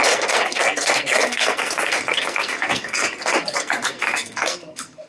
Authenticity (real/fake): fake